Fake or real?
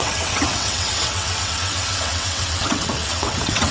fake